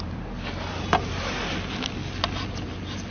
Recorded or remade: recorded